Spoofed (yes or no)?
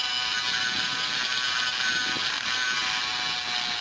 no